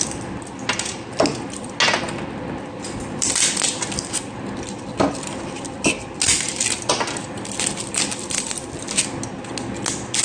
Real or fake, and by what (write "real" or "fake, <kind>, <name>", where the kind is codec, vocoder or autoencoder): real